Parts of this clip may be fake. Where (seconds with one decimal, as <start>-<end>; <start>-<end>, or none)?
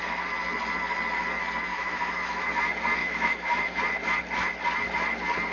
1.7-2.5; 3.0-3.8